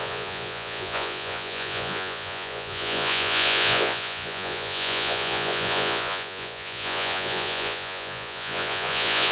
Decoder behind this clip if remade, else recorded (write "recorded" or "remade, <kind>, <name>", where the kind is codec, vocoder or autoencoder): remade, vocoder, Vocos